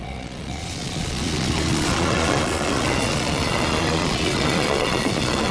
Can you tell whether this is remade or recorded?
remade